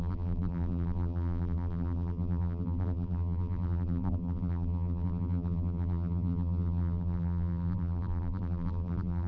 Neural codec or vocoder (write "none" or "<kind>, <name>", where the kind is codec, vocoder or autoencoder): vocoder, BigVGAN v2